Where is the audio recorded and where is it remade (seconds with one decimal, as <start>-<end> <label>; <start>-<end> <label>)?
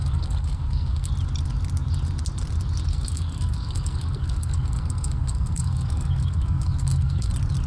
0.0-1.1 remade; 1.1-2.9 recorded; 2.9-7.3 remade; 7.3-7.7 recorded